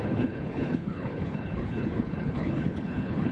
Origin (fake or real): fake